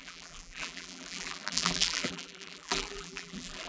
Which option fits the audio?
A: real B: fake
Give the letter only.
B